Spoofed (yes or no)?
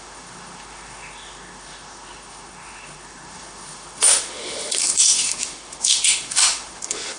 yes